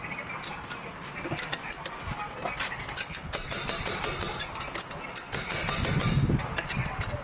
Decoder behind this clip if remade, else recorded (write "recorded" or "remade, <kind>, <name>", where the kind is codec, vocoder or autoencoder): recorded